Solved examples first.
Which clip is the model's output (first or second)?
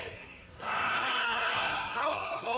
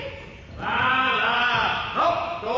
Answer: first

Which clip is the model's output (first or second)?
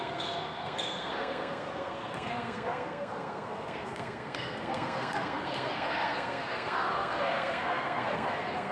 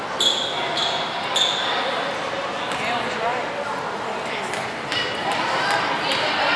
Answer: first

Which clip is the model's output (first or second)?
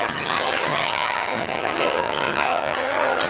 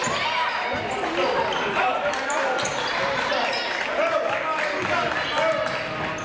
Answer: first